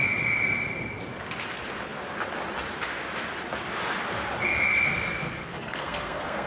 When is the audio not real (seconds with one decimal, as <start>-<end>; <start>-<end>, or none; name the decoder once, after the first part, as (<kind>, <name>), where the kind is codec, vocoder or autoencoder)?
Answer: 5.4-6.5 (codec, SNAC)